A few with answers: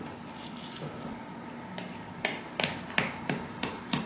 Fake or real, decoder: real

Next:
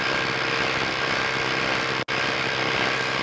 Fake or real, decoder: real